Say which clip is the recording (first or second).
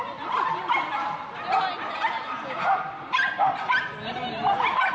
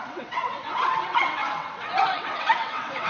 first